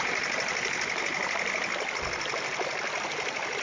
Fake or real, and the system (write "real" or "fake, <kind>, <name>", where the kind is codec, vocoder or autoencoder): real